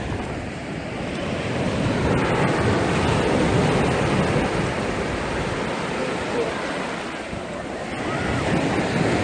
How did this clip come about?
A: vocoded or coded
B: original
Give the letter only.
A